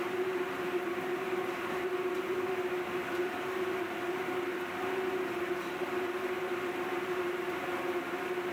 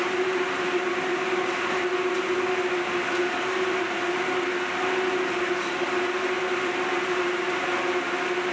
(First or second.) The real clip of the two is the second